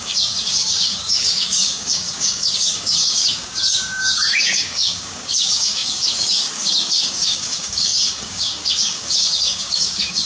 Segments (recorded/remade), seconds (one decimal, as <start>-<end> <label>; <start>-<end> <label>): 0.0-10.3 remade